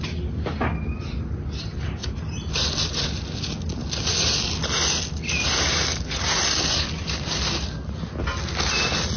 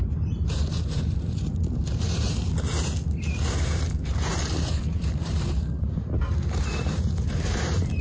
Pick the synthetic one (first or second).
second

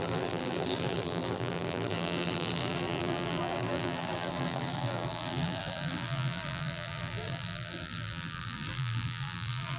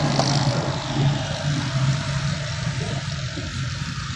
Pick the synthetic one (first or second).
first